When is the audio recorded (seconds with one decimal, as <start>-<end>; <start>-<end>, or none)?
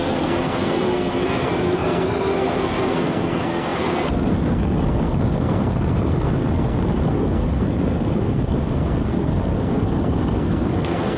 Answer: none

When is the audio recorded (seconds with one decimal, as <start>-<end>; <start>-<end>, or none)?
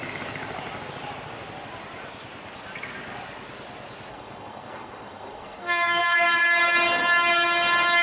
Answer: 0.0-4.1; 6.4-8.0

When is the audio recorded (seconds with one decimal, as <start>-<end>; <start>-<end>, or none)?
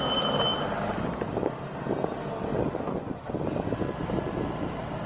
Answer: 0.0-5.1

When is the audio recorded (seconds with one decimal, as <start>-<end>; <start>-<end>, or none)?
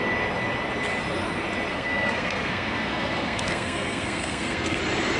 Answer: 0.0-1.7; 4.8-5.2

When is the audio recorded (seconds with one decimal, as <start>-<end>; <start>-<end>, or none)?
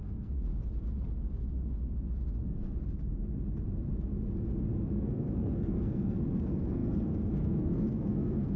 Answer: 0.5-4.9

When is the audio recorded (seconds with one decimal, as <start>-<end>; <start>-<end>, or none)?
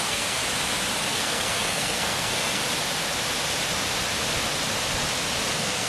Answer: 0.4-1.0; 2.6-5.5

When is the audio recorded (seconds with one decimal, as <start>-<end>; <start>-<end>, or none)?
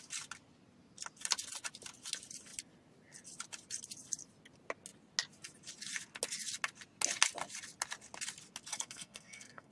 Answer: 0.0-8.7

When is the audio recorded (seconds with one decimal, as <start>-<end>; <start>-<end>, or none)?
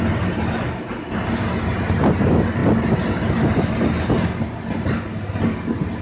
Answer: 0.0-6.0